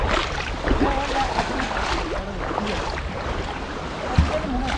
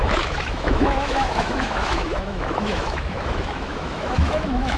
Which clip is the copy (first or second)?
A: second